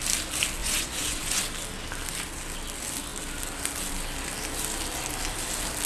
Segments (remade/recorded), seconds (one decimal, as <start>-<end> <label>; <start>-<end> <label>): 0.0-0.6 recorded; 0.6-1.4 remade; 1.4-5.9 recorded